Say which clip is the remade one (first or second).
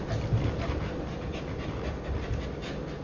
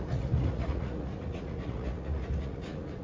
second